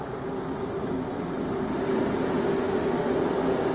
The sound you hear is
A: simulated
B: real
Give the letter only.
B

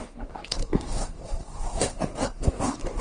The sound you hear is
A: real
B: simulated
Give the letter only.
B